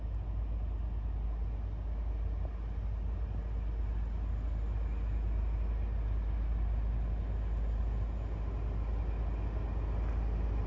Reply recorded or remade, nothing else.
recorded